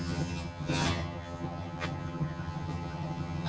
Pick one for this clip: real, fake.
fake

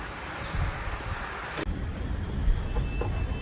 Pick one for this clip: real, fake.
real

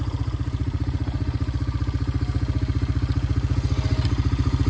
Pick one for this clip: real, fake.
real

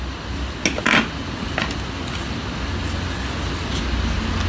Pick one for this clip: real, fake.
real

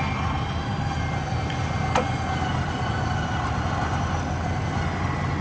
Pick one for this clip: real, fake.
real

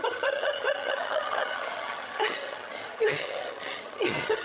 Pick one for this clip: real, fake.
fake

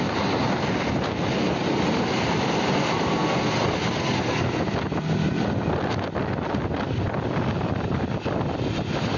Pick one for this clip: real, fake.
real